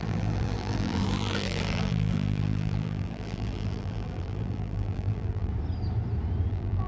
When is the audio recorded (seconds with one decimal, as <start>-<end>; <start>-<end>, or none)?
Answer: 5.5-6.5